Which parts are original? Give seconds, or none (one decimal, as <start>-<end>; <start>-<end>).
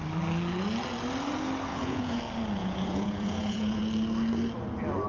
0.0-1.7; 2.2-2.6; 3.8-5.1